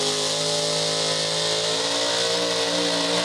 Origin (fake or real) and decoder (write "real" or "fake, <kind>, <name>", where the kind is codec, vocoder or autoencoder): real